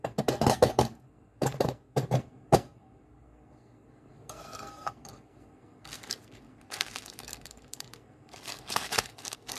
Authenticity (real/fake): fake